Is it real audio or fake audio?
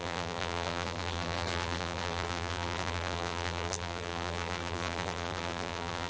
fake